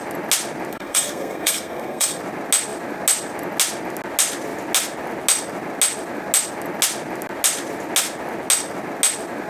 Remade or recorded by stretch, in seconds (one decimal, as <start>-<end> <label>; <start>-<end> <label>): 0.0-0.7 recorded; 0.7-2.2 remade; 2.2-9.5 recorded